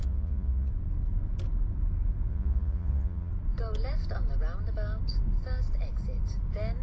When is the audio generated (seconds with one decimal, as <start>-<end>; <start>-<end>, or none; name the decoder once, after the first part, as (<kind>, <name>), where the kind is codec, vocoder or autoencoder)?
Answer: 0.0-0.7 (vocoder, Vocos); 2.3-3.3